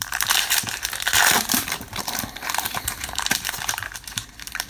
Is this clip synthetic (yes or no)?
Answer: yes